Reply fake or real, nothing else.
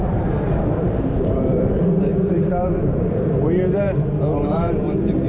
fake